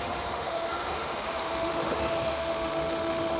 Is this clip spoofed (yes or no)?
yes